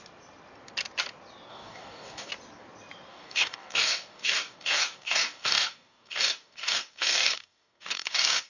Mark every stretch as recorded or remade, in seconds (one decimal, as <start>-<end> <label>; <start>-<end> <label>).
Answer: 0.0-1.5 recorded; 1.5-2.3 remade; 2.3-3.1 recorded; 3.1-8.5 remade